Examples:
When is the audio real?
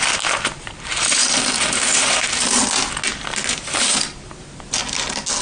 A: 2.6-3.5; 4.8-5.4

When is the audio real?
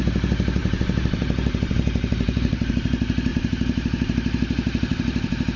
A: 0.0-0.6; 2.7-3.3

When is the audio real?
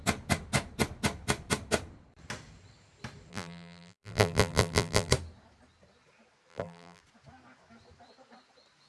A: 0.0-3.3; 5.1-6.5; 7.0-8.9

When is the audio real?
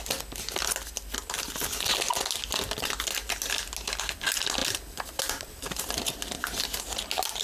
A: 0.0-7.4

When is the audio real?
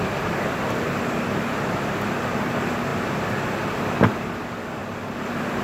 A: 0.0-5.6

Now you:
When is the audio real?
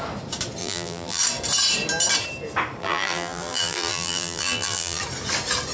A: 0.0-0.6; 1.2-2.8; 5.0-5.7